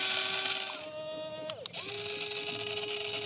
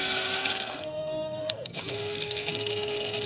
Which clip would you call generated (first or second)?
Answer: second